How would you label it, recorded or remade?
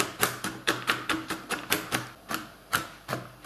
recorded